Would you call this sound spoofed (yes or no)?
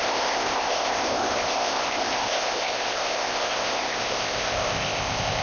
yes